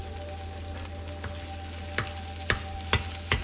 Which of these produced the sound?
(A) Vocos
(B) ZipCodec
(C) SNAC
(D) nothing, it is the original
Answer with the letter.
D